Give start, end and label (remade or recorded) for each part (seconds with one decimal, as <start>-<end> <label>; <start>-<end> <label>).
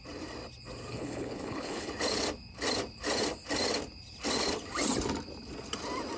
0.0-0.9 recorded; 0.9-1.9 remade; 1.9-6.2 recorded